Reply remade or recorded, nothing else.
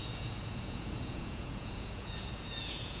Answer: remade